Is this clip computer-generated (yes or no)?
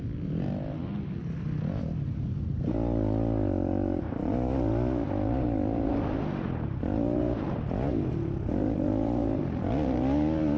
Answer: no